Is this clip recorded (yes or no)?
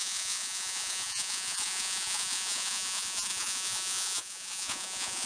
no